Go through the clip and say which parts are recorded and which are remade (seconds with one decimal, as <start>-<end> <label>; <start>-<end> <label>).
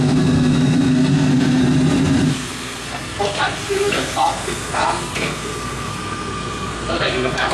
0.0-1.6 remade; 1.6-2.3 recorded; 2.3-7.5 remade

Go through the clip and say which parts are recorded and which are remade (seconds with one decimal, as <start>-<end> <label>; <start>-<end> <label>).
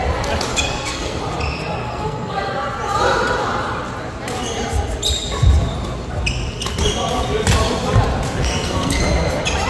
0.0-0.5 recorded; 0.5-1.2 remade; 1.2-1.8 recorded; 1.8-2.5 remade; 2.5-8.4 recorded; 8.4-9.0 remade; 9.0-9.7 recorded